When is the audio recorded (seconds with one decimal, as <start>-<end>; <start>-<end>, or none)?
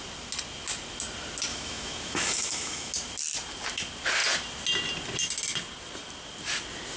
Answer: 0.0-1.5; 2.9-7.0